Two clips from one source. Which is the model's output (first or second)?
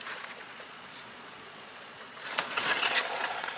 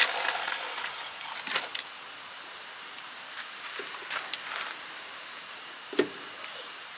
first